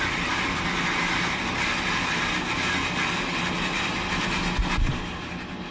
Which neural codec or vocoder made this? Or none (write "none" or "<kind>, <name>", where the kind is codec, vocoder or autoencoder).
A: none